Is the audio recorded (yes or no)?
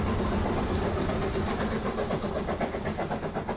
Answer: yes